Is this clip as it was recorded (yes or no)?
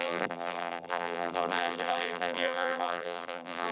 no